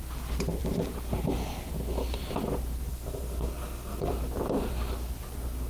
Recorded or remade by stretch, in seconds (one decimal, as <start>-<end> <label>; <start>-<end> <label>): 0.0-2.9 recorded; 2.9-4.1 remade; 4.1-5.7 recorded